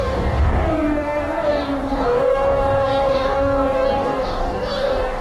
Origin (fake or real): fake